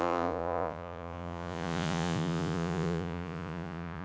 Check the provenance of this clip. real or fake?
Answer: fake